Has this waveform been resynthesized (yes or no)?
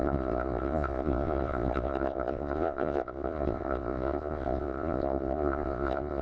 yes